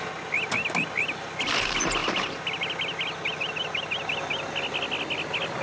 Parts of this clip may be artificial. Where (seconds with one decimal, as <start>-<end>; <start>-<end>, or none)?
none